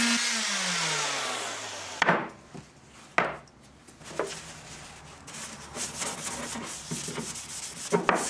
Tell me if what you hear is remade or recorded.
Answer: recorded